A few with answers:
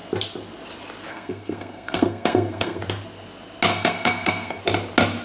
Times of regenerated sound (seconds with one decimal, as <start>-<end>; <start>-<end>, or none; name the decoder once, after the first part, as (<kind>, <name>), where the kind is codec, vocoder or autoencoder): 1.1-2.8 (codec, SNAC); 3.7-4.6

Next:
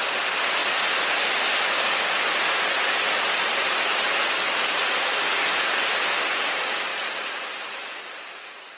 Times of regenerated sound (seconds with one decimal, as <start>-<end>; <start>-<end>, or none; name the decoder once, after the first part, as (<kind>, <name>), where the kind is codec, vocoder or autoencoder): 0.6-3.7 (vocoder, BigVGAN v2); 6.9-8.1

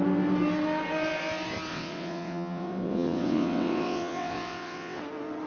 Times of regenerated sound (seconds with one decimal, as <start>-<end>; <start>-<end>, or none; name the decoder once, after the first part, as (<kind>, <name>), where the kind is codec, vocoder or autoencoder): 1.7-5.0 (vocoder, WaveNeXt)